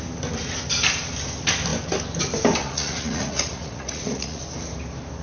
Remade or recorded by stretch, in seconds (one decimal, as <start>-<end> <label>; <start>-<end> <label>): 0.0-2.6 recorded; 2.6-4.4 remade; 4.4-5.2 recorded